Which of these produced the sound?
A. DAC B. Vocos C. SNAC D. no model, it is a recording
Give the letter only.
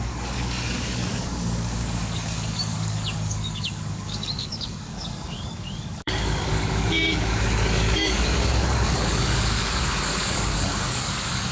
A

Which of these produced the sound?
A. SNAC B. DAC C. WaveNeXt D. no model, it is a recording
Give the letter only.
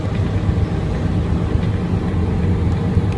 D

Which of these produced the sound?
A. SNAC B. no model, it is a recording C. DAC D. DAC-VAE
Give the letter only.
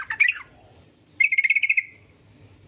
B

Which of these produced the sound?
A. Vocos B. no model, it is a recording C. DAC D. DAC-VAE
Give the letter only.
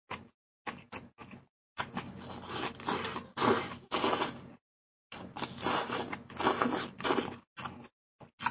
B